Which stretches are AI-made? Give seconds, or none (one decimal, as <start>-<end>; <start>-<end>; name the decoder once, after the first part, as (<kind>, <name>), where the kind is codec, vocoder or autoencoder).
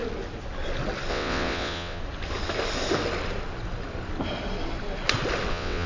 1.1-2.0 (vocoder, WaveNeXt); 5.5-5.9